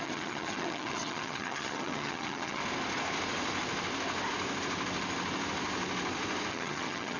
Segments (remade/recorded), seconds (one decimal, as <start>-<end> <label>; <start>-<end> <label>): 0.0-2.6 remade; 2.6-6.5 recorded; 6.5-7.2 remade